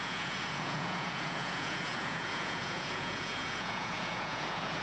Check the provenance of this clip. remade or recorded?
remade